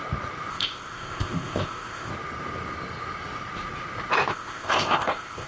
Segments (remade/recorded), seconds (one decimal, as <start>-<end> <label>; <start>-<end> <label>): 0.0-0.5 recorded; 0.5-2.1 remade; 2.1-4.3 recorded; 4.3-5.5 remade